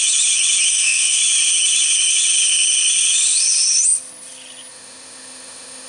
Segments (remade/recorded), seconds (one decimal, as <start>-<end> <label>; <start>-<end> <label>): 0.0-0.7 recorded; 0.7-1.2 remade; 1.2-4.7 recorded; 4.7-5.9 remade